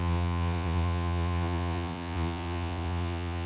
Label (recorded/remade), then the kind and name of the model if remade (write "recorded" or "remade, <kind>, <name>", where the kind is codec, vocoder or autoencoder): remade, vocoder, Vocos